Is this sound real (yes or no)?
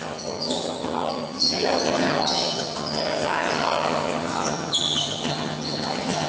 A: no